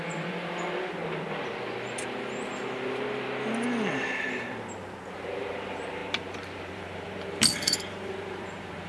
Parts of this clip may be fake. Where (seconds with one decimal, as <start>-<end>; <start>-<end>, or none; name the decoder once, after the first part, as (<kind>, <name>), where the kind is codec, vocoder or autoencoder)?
0.0-1.0 (vocoder, BigVGAN v2); 4.0-8.9